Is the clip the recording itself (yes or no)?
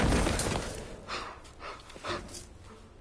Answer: yes